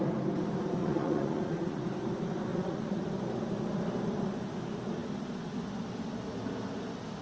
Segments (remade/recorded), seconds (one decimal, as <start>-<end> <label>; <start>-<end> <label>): 0.0-0.8 recorded; 0.8-1.8 remade; 1.8-2.5 recorded; 2.5-3.1 remade; 3.1-7.2 recorded